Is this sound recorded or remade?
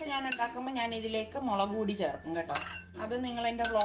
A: remade